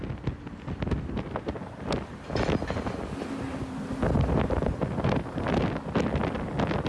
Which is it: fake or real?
real